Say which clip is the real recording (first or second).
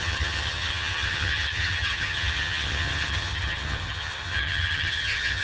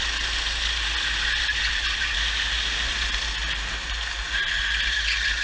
second